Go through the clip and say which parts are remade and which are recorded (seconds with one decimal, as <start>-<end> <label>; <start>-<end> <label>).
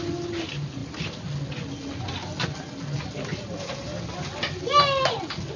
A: 0.0-5.6 recorded